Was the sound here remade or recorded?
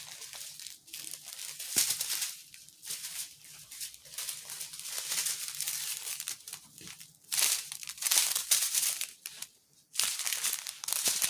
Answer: remade